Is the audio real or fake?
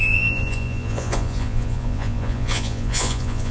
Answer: fake